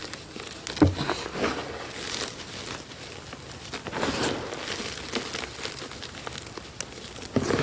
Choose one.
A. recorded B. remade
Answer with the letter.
A